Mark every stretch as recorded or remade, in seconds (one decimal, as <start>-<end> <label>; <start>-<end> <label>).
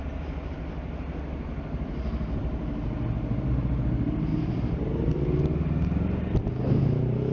0.0-7.3 recorded